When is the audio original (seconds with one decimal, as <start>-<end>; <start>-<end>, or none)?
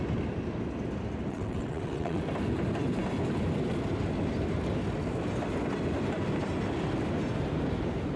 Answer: 0.0-1.3; 2.2-8.2